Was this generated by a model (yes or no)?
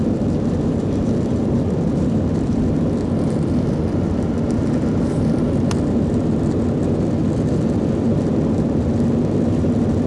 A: no